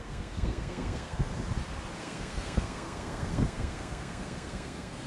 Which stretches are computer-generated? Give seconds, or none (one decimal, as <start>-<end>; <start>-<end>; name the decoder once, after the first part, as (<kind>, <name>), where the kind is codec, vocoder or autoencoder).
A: 0.0-1.3 (codec, SNAC); 2.0-5.1